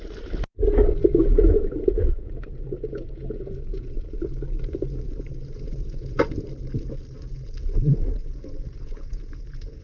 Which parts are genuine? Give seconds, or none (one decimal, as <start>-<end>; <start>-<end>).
0.0-1.0; 6.2-8.2